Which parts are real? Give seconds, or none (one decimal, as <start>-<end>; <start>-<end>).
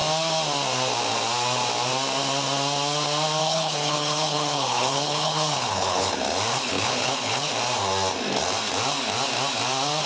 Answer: 0.0-3.4; 6.1-6.5; 7.5-10.1